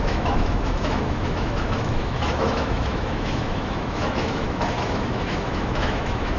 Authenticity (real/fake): fake